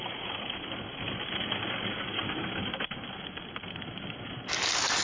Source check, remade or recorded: recorded